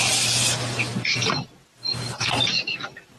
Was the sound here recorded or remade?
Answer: recorded